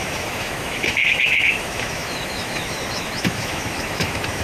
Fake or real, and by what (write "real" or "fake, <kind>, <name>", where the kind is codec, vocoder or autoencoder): fake, autoencoder, DAC-VAE